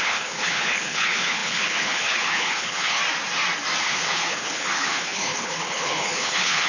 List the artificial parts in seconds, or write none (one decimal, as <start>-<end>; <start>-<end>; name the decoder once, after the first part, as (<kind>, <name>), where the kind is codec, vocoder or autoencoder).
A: 0.0-3.0 (codec, HILCodec); 3.8-6.7

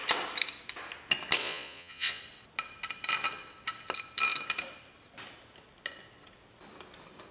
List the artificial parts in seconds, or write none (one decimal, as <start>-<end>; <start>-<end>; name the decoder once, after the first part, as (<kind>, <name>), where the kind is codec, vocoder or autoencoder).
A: 1.4-2.2 (vocoder, Vocos)